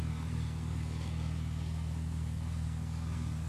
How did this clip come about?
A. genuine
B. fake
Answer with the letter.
B